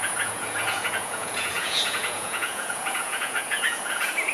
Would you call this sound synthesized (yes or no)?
yes